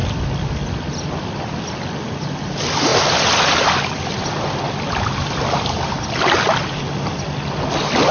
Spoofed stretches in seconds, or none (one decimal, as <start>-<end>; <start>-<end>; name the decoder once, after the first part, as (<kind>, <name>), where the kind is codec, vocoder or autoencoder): none